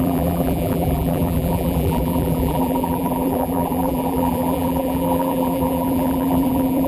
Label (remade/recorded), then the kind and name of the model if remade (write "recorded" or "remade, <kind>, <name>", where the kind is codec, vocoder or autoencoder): remade, vocoder, BigVGAN v2